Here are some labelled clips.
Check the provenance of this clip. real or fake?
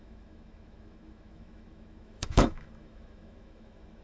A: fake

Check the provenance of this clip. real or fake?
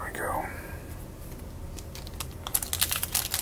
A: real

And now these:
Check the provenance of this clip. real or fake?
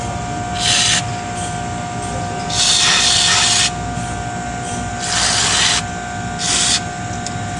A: real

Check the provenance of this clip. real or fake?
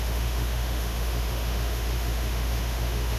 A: fake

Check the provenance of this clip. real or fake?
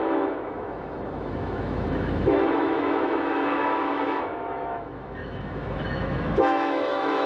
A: fake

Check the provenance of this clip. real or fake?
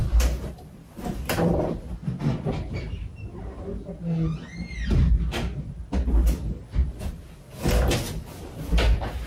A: real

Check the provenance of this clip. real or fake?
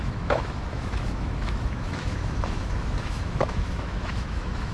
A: fake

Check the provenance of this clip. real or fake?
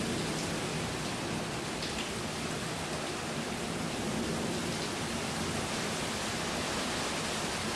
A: real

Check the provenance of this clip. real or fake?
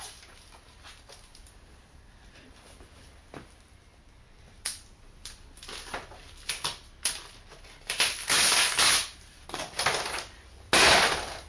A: real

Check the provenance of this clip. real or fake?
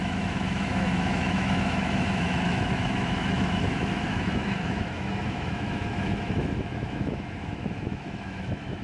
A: fake